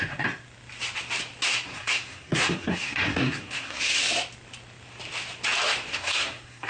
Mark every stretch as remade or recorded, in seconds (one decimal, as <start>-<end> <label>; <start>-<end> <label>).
0.0-1.5 recorded; 1.5-4.0 remade; 4.0-5.9 recorded; 5.9-6.7 remade